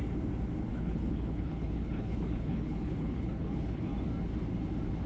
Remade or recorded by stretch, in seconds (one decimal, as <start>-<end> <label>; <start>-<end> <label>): 0.0-0.7 recorded; 0.7-3.8 remade; 3.8-5.1 recorded